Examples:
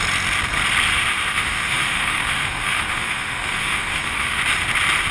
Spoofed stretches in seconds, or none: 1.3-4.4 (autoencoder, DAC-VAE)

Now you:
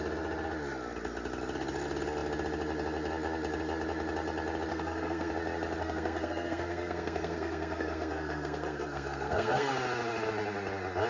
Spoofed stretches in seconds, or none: 4.7-5.3 (codec, SNAC); 5.8-9.7